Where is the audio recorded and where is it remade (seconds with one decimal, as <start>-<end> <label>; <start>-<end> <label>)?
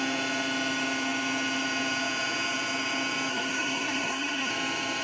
0.0-3.3 recorded; 3.3-4.5 remade; 4.5-5.0 recorded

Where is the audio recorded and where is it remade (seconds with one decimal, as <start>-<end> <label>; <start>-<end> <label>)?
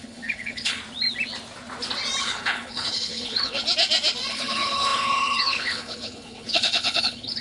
0.0-0.8 remade; 0.8-2.2 recorded; 2.2-3.6 remade; 3.6-4.3 recorded; 4.3-7.4 remade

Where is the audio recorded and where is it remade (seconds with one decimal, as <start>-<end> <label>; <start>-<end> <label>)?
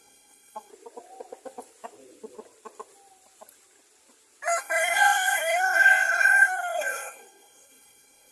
0.0-0.7 remade; 0.7-4.6 recorded; 4.6-8.3 remade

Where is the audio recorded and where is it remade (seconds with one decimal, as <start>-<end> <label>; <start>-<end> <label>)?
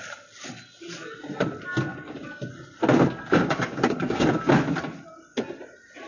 0.0-3.4 recorded; 3.4-4.5 remade; 4.5-6.1 recorded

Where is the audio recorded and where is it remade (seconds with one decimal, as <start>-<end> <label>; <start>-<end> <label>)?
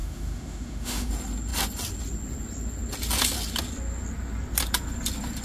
0.0-1.1 remade; 1.1-5.4 recorded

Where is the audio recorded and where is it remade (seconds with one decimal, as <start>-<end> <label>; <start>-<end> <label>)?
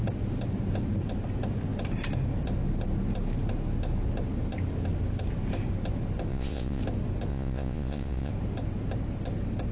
0.0-6.3 recorded; 6.3-6.8 remade; 6.8-7.3 recorded; 7.3-8.3 remade; 8.3-9.7 recorded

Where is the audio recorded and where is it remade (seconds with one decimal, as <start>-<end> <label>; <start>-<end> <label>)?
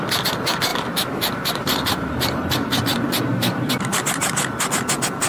0.0-0.7 recorded; 0.7-3.7 remade; 3.7-5.3 recorded